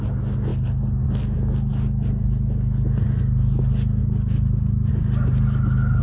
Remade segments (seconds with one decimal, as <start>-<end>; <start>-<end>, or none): 4.0-4.9